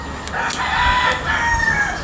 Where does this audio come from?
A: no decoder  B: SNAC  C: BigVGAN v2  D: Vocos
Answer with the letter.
A